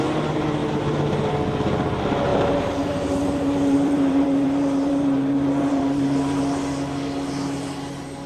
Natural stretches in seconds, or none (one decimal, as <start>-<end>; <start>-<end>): 0.0-2.3; 6.4-8.3